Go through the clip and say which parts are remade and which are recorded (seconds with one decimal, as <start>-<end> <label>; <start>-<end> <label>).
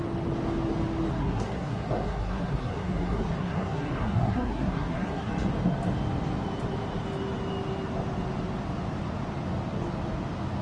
0.0-1.2 recorded; 1.2-5.3 remade; 5.3-10.6 recorded